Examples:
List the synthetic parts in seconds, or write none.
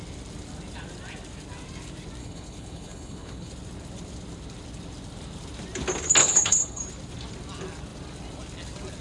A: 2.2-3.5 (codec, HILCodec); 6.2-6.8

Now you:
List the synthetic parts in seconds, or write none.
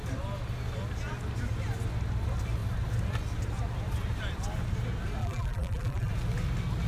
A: 5.2-6.1 (vocoder, BigVGAN v2)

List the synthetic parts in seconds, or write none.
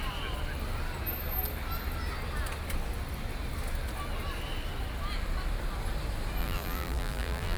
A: 6.4-7.6 (vocoder, BigVGAN v2)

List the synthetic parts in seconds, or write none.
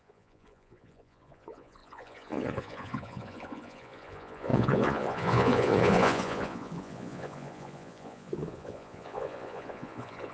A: 0.0-10.3 (vocoder, Vocos)